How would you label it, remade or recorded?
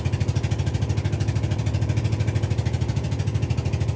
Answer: remade